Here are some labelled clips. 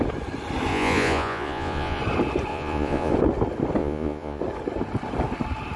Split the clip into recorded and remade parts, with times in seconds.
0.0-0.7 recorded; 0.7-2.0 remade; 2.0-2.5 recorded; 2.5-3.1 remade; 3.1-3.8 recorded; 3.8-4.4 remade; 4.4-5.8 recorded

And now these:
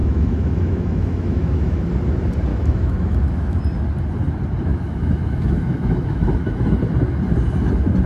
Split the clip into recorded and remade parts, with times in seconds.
0.0-1.9 remade; 1.9-2.5 recorded; 2.5-3.6 remade; 3.6-4.7 recorded; 4.7-6.8 remade; 6.8-8.1 recorded

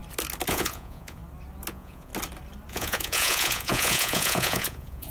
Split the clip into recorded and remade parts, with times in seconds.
0.0-0.5 recorded; 0.5-1.2 remade; 1.2-1.7 recorded; 1.7-2.1 remade; 2.1-2.7 recorded; 2.7-5.1 remade